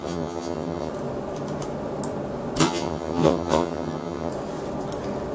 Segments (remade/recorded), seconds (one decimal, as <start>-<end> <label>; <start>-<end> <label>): 0.0-0.9 remade; 0.9-2.6 recorded; 2.6-4.3 remade; 4.3-5.3 recorded